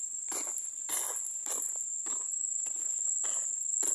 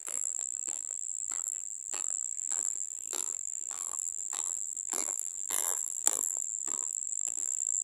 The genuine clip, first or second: first